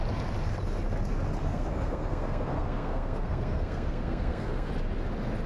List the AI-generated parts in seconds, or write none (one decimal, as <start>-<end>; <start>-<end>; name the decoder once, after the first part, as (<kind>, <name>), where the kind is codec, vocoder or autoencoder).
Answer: 1.4-4.7 (codec, SNAC)